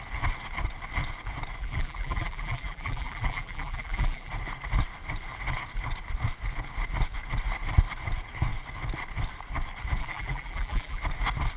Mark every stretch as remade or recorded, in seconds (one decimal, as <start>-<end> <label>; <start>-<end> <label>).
0.0-1.6 recorded; 1.6-4.3 remade; 4.3-10.0 recorded; 10.0-11.0 remade; 11.0-11.6 recorded